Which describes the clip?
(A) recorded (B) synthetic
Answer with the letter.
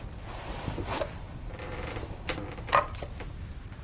A